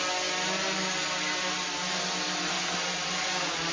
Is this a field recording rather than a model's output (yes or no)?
yes